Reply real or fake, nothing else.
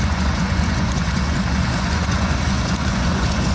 fake